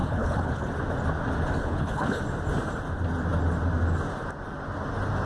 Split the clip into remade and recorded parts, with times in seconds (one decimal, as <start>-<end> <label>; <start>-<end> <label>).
0.0-0.7 remade; 0.7-1.6 recorded; 1.6-2.2 remade; 2.2-5.3 recorded